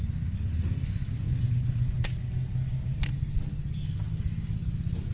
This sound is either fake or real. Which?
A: real